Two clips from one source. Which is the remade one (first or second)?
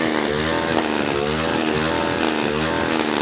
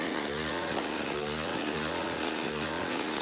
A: second